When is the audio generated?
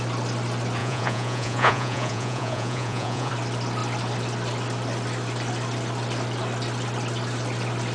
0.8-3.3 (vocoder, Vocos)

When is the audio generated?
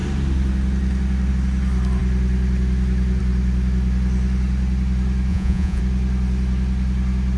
5.3-5.8 (vocoder, Vocos)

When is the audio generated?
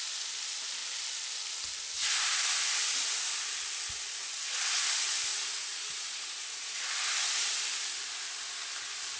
5.3-6.8 (vocoder, Vocos)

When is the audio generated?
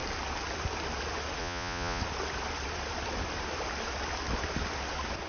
1.4-2.0 (vocoder, Vocos)